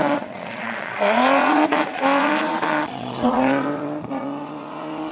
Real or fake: fake